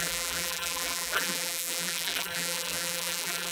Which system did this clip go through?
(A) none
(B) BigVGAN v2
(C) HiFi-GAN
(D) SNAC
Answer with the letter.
B